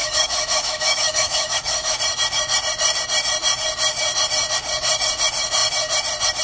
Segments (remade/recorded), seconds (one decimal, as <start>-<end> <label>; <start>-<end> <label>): 0.0-2.0 remade; 2.0-6.4 recorded